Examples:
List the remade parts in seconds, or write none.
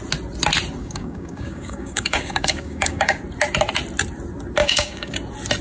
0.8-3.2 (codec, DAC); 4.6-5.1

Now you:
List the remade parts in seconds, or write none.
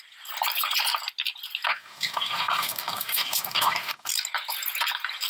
1.7-4.1 (codec, DAC)